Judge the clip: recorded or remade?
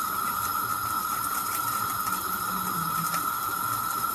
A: recorded